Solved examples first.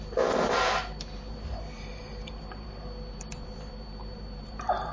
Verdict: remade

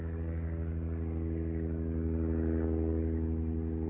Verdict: recorded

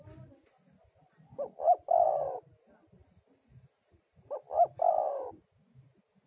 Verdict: recorded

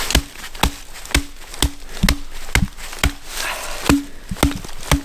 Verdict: recorded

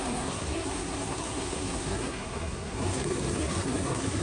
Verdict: remade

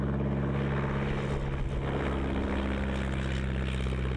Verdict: recorded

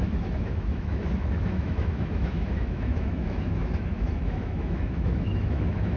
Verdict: remade